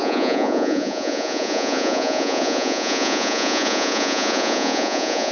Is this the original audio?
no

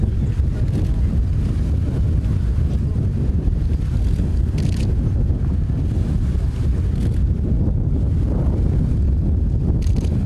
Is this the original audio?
yes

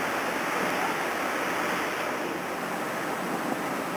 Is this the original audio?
yes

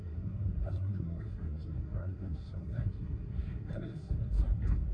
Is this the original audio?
no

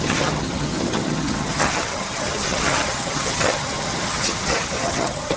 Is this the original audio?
no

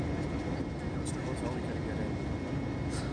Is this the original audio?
yes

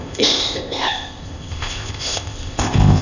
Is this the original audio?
no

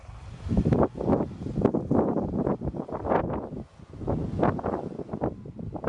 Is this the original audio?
yes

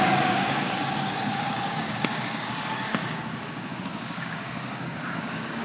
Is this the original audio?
no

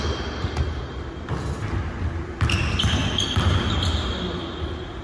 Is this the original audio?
yes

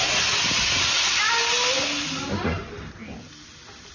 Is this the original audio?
yes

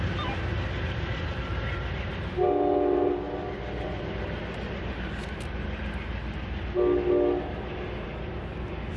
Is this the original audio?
yes